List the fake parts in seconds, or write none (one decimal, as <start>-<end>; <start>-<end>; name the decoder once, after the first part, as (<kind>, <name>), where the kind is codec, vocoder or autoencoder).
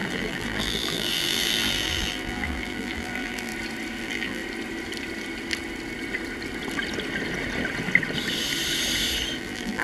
0.0-3.5 (vocoder, BigVGAN v2); 4.0-4.4; 9.4-9.8